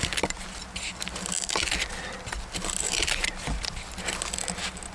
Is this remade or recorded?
recorded